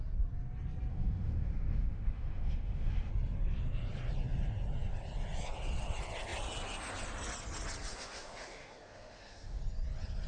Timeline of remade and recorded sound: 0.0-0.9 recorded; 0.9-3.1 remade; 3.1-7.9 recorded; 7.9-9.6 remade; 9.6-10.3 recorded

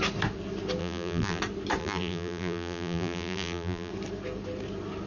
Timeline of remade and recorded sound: 0.0-0.8 recorded; 0.8-1.4 remade; 1.4-1.8 recorded; 1.8-3.9 remade; 3.9-5.1 recorded

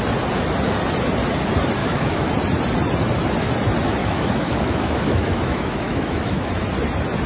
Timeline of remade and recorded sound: 0.0-1.8 recorded; 1.8-2.3 remade; 2.3-4.0 recorded; 4.0-6.5 remade; 6.5-7.3 recorded

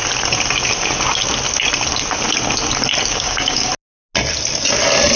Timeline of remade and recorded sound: 0.0-3.1 recorded; 3.1-3.7 remade; 3.7-5.2 recorded

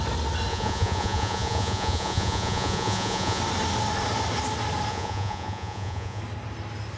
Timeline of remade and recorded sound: 0.0-0.5 recorded; 0.5-3.4 remade; 3.4-4.9 recorded; 4.9-6.2 remade; 6.2-7.0 recorded

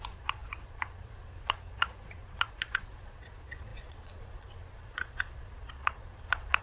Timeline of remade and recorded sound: 0.0-6.6 remade